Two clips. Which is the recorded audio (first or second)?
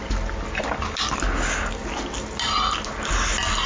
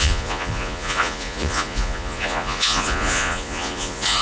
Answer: first